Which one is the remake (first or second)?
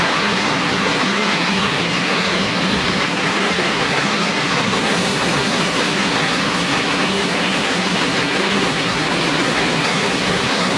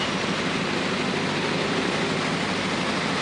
first